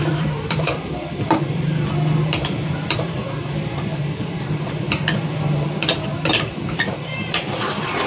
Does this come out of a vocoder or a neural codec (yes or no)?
yes